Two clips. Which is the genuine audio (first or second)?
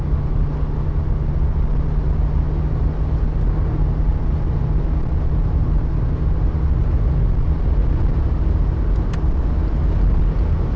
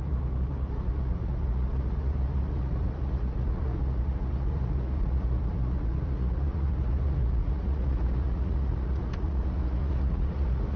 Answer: first